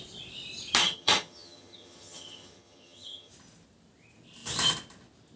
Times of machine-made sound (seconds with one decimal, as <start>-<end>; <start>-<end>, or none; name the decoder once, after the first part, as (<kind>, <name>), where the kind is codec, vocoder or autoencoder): 0.8-3.3 (vocoder, HiFi-GAN)